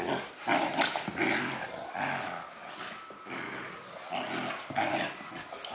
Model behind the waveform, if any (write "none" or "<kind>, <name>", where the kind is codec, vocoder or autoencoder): none